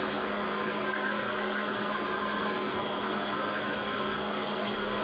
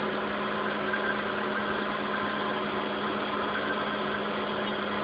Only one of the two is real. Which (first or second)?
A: second